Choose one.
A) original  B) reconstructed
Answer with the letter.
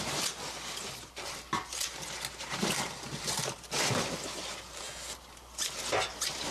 A